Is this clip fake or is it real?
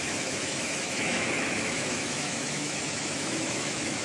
fake